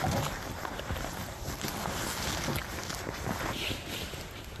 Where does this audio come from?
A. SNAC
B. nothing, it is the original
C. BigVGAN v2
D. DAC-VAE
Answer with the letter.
B